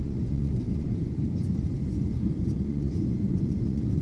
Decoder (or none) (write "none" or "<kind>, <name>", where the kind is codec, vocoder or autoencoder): vocoder, Vocos